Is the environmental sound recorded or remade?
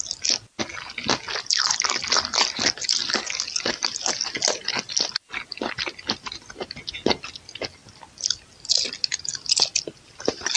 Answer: recorded